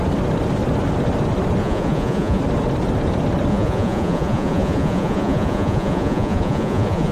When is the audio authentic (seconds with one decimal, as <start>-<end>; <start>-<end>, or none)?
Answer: 0.0-1.6; 2.4-3.5